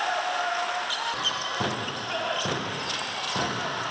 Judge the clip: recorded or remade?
recorded